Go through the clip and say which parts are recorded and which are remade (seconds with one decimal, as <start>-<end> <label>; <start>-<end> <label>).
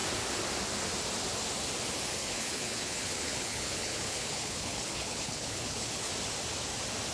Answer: 0.0-2.2 recorded; 2.2-6.1 remade; 6.1-7.1 recorded